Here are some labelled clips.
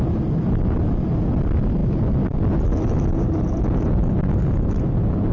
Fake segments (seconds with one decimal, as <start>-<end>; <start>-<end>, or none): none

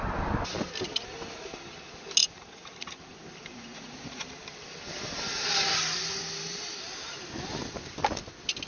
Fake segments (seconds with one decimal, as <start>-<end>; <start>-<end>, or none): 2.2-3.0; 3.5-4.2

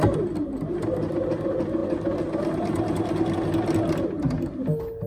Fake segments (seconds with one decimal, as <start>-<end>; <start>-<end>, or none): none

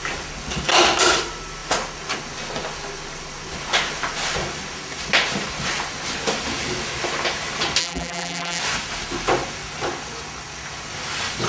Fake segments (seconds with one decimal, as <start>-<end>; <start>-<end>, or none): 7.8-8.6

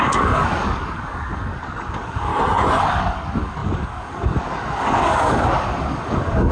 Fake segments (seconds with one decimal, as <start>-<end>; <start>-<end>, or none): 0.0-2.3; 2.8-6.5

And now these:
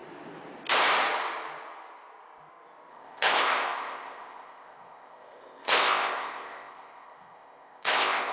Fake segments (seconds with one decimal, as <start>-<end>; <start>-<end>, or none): 2.9-8.3

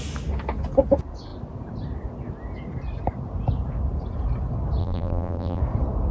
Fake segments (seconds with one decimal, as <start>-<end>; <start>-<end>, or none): 4.8-5.6